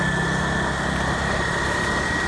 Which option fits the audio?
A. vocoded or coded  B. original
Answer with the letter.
B